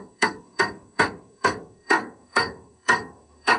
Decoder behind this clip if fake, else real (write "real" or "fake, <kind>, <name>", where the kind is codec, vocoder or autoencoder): fake, codec, SNAC